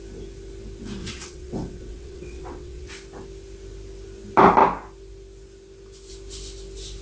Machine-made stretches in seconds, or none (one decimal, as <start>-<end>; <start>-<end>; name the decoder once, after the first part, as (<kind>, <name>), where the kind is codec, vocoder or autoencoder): 1.0-2.9 (vocoder, WaveNeXt)